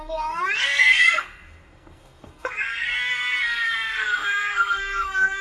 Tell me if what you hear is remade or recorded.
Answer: remade